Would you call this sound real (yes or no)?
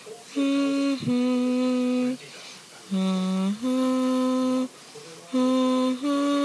yes